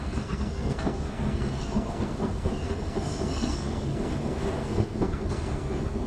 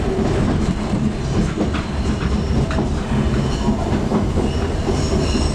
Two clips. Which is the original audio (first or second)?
second